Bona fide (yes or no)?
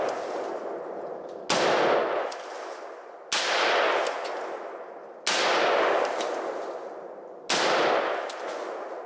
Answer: yes